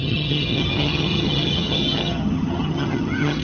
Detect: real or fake fake